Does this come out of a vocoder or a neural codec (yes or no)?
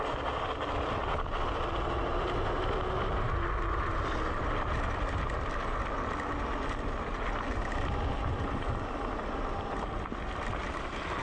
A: no